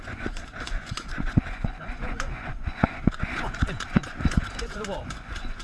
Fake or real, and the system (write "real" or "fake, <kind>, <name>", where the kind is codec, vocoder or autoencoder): fake, vocoder, Vocos